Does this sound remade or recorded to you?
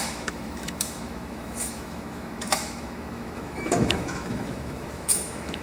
remade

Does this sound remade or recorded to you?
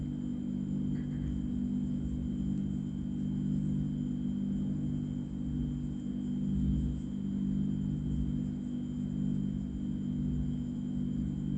recorded